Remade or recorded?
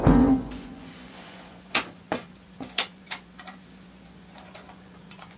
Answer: remade